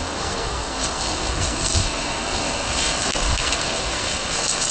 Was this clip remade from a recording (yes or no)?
yes